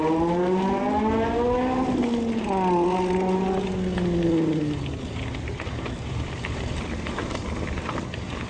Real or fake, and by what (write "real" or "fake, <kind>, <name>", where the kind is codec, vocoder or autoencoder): real